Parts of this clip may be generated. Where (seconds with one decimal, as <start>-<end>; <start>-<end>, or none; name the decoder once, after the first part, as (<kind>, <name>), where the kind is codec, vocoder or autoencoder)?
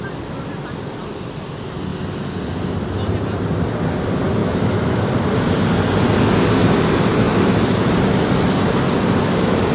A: 4.4-5.1 (autoencoder, DAC-VAE); 7.1-7.9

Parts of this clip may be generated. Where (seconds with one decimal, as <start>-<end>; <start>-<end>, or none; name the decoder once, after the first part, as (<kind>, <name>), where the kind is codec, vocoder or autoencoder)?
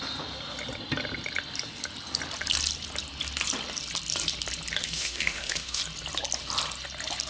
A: 4.8-5.8 (autoencoder, DAC-VAE)